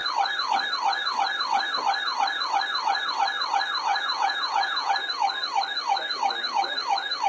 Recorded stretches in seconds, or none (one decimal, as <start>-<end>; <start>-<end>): 0.0-3.9; 4.9-7.3